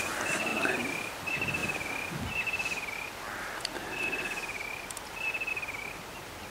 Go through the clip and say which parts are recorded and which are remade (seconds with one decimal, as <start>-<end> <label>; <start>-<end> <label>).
0.0-0.5 remade; 0.5-1.1 recorded; 1.1-6.5 remade